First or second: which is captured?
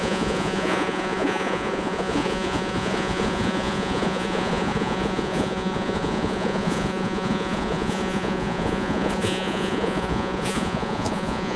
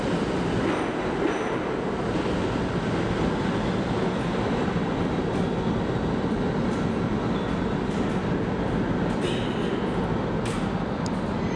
second